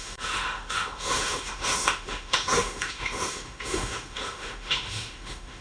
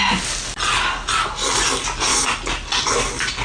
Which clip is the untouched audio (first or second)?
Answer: second